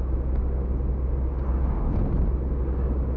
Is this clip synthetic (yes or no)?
no